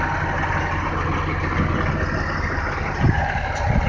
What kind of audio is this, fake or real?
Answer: real